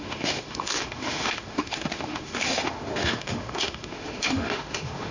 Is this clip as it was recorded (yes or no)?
no